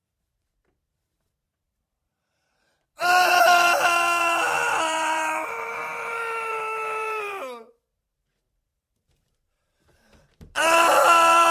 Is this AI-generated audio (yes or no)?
yes